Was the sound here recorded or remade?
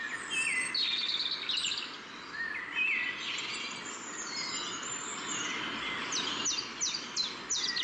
recorded